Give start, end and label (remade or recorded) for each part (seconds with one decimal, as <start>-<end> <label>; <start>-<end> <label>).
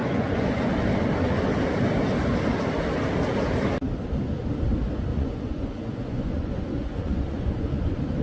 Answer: 0.0-0.7 remade; 0.7-5.1 recorded; 5.1-8.2 remade